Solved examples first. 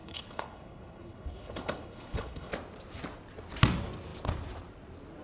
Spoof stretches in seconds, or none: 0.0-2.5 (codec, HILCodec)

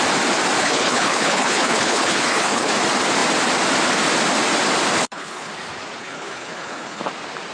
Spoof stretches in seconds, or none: 0.6-2.7 (codec, HILCodec); 5.0-5.5; 6.0-7.0

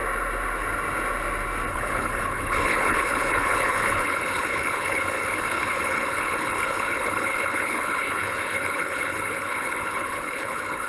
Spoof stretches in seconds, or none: 1.7-10.9 (codec, HILCodec)

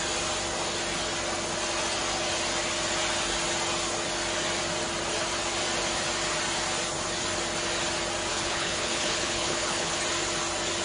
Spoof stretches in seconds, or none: 8.3-10.0 (codec, HILCodec)

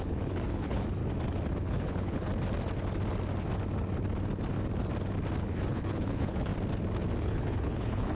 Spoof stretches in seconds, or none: 0.0-1.0 (codec, HILCodec); 1.6-2.3; 5.4-6.5; 7.2-8.1

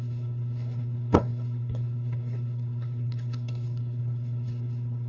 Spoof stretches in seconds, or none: 0.0-5.1 (codec, HILCodec)

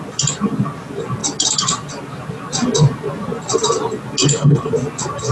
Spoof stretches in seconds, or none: 4.2-4.7 (codec, HILCodec)

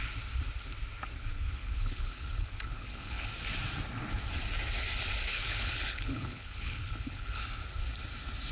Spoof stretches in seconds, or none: 1.3-3.3 (codec, HILCodec); 5.3-7.4